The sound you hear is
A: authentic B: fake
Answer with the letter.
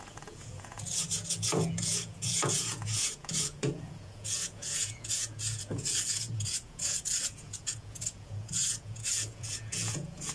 B